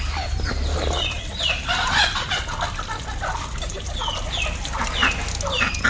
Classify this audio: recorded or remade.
recorded